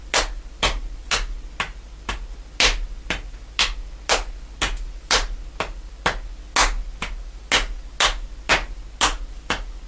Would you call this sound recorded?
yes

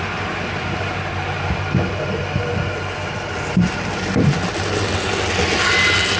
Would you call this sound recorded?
yes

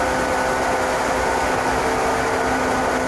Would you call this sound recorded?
yes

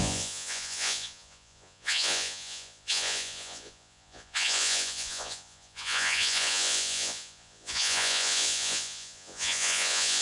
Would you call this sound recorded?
no